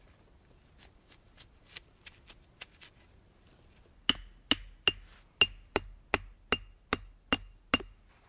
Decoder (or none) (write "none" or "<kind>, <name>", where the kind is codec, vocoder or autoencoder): none